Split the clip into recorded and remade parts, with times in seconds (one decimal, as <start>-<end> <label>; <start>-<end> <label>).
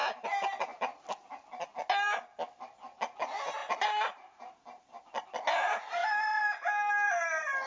0.0-3.6 recorded; 3.6-5.0 remade; 5.0-7.7 recorded